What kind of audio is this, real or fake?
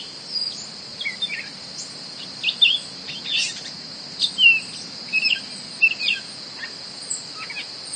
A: real